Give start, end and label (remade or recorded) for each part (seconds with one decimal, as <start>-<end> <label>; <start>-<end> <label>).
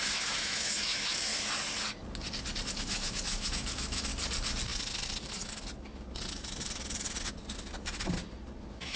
0.0-1.3 remade; 1.3-2.7 recorded; 2.7-4.1 remade; 4.1-8.6 recorded; 8.6-9.0 remade